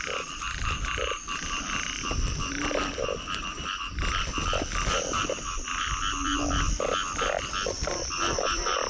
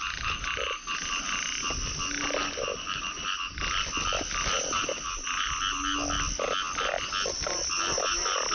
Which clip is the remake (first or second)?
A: first